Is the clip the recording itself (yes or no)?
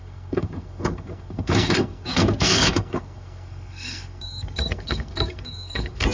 no